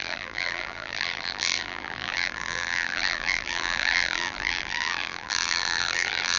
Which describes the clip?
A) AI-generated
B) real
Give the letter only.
A